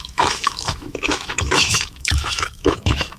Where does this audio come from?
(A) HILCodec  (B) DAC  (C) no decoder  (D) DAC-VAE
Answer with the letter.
D